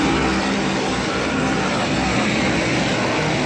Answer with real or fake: real